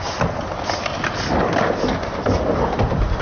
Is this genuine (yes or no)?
yes